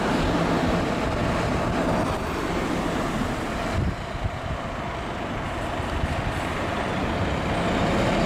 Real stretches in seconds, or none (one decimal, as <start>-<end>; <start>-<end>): 0.0-8.3